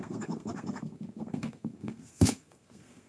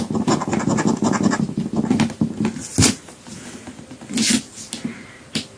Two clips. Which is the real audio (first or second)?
second